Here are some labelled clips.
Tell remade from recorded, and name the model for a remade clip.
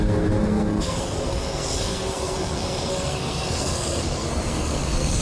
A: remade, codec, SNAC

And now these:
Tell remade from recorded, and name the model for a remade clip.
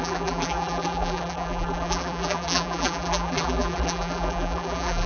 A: remade, vocoder, BigVGAN v2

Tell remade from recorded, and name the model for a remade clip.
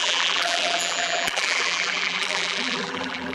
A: remade, vocoder, BigVGAN v2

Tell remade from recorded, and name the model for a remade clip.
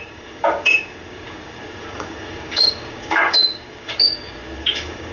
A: remade, codec, DAC